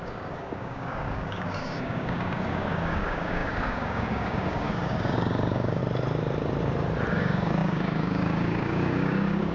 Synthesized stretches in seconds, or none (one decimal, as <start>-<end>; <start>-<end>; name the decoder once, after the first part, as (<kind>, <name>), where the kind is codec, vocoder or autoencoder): 0.0-5.8 (codec, DAC); 7.1-9.5